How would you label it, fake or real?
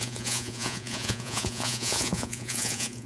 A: fake